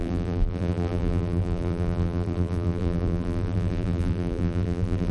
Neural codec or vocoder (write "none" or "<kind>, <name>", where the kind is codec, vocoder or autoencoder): vocoder, BigVGAN v2